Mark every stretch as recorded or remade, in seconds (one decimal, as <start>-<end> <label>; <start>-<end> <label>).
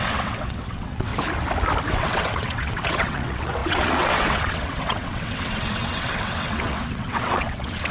0.0-1.1 remade; 1.1-1.9 recorded; 1.9-7.9 remade